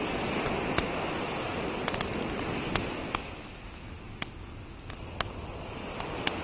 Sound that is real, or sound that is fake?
real